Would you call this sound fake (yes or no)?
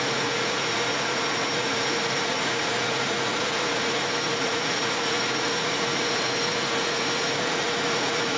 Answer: yes